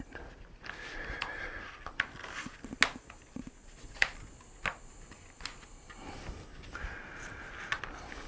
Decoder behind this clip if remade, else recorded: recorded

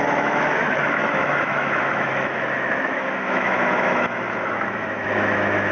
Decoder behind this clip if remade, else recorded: remade, autoencoder, DAC-VAE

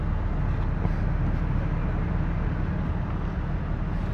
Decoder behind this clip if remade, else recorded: recorded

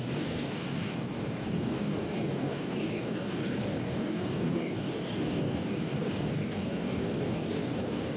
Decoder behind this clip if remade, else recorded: remade, codec, DAC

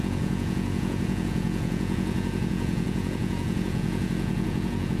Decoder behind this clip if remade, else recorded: remade, vocoder, Vocos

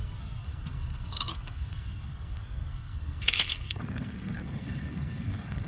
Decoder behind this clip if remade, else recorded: remade, codec, SNAC